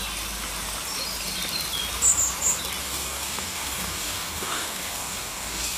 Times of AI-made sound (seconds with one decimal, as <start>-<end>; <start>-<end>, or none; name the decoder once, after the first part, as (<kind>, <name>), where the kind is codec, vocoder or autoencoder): 2.8-5.8 (codec, DAC)